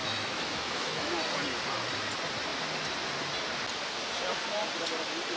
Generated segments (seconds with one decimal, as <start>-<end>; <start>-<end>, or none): 0.0-1.1